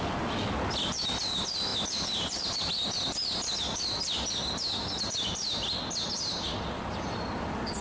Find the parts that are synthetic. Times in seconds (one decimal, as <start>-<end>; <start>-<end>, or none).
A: none

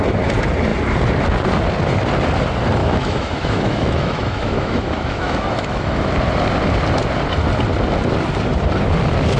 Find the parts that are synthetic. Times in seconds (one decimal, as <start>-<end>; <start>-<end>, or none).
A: 2.8-6.1

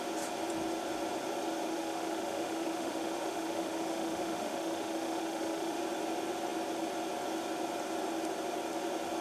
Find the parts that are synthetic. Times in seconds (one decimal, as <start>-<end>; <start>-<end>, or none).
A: 1.7-5.8